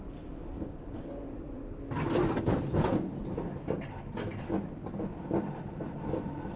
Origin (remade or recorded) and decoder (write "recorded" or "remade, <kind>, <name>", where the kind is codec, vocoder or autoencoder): recorded